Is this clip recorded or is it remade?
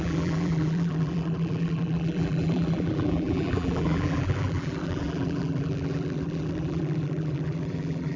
remade